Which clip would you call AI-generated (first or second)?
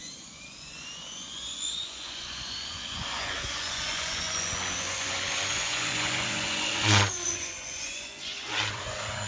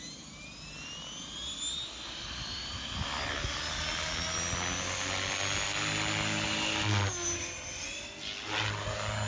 first